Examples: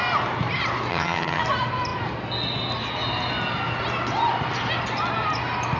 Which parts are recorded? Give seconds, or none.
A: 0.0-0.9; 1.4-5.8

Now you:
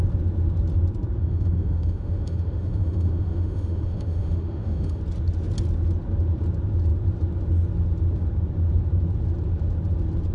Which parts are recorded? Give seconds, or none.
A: 0.0-1.2; 5.0-10.3